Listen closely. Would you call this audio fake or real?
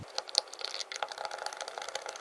real